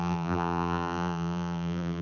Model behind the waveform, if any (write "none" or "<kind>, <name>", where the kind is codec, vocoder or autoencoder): vocoder, BigVGAN v2